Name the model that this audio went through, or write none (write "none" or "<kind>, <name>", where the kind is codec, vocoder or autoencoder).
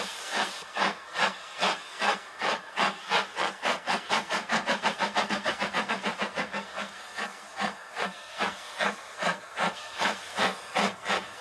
codec, SNAC